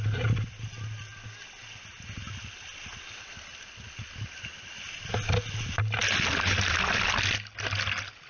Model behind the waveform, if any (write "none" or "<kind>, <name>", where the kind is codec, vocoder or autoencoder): none